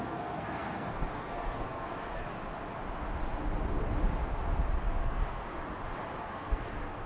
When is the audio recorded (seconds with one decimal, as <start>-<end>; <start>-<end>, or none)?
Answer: 2.2-5.0; 5.6-6.2